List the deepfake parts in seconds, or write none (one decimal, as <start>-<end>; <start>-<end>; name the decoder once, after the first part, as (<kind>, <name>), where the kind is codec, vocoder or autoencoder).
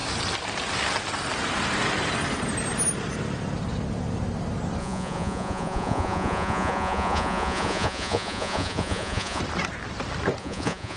4.8-9.4 (vocoder, Vocos); 10.4-11.0